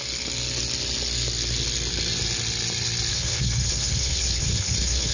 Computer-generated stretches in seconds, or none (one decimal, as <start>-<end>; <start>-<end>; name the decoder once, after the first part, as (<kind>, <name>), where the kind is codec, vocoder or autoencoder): 3.1-5.1 (codec, HILCodec)